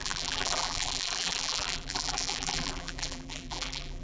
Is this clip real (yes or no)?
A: no